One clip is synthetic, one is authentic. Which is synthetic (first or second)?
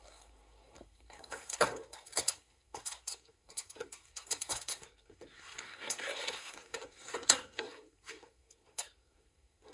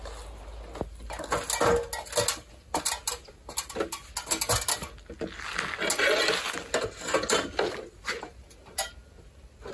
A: first